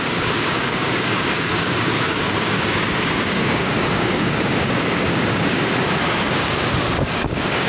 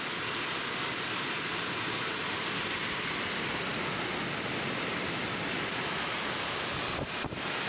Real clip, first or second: second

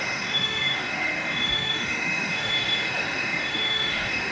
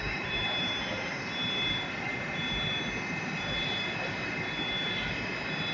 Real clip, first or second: second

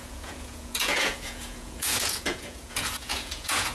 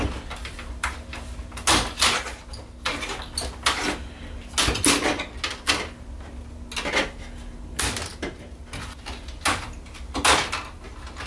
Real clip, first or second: second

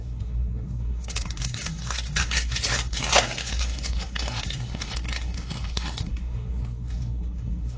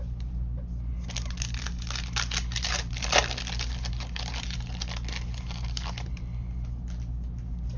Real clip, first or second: second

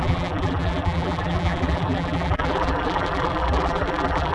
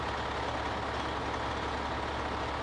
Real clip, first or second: second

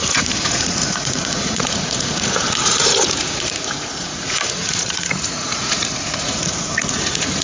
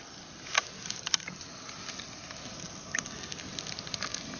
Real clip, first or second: second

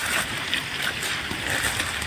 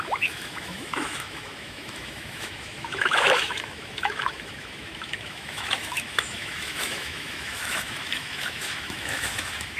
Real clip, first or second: first